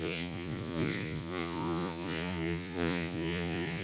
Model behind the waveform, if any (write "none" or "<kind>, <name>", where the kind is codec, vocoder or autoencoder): vocoder, Vocos